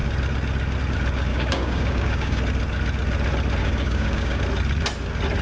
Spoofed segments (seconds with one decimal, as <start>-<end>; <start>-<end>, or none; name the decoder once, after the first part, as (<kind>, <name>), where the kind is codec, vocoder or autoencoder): 1.3-2.4 (codec, DAC); 3.6-4.4